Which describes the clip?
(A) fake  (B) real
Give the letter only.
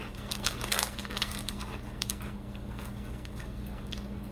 A